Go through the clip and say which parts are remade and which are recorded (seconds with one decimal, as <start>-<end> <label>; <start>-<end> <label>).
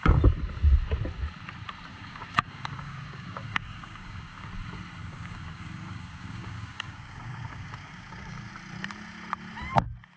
0.0-1.9 recorded; 1.9-4.5 remade; 4.5-5.0 recorded; 5.0-8.5 remade; 8.5-10.2 recorded